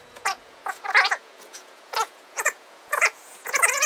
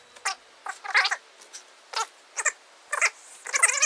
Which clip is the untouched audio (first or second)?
second